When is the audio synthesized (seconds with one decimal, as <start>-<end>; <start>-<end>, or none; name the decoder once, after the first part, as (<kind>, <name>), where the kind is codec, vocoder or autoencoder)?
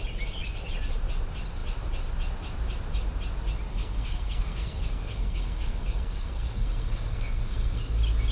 3.7-7.8 (codec, SNAC)